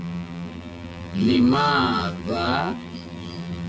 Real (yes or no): no